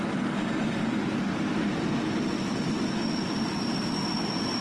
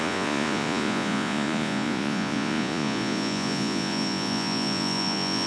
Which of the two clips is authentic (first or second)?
first